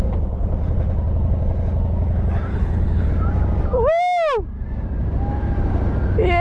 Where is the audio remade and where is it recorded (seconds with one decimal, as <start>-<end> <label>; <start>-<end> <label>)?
0.0-2.5 recorded; 2.5-3.1 remade; 3.1-6.4 recorded